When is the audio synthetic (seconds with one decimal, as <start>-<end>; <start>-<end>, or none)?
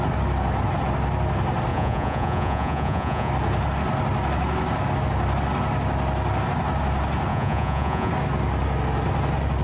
1.7-3.3; 7.3-8.1